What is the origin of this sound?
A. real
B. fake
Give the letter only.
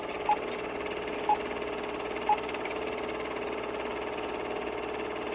A